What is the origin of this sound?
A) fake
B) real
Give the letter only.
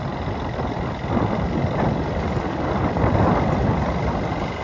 B